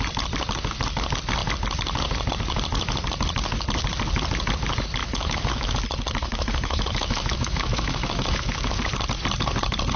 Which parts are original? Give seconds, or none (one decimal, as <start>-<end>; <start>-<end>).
0.0-5.0; 5.7-6.2; 8.9-10.0